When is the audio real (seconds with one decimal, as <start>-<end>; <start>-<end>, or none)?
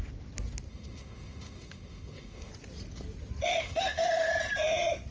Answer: 0.0-0.7; 2.5-3.5; 4.3-5.1